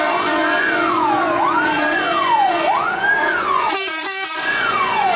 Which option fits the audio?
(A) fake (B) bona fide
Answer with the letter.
A